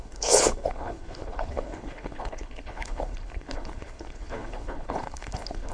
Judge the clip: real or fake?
fake